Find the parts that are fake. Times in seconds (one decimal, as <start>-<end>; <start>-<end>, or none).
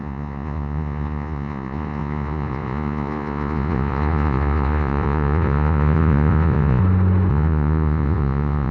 0.0-6.8; 7.3-8.7